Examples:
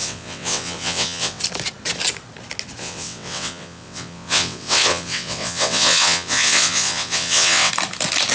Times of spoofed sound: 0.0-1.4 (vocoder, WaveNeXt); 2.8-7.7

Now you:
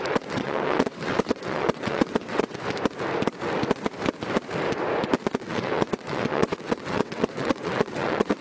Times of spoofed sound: 0.0-2.6 (vocoder, WaveNeXt); 5.3-8.4

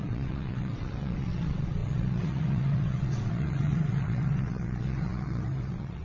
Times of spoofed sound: 0.0-6.0 (vocoder, WaveNeXt)

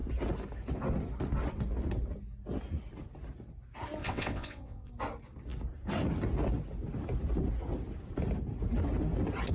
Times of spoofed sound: 4.0-4.9 (vocoder, WaveNeXt)